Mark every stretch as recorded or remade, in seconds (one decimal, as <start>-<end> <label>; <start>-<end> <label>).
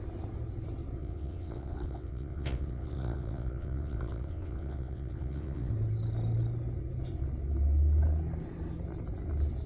0.0-1.0 recorded; 1.0-5.7 remade; 5.7-9.7 recorded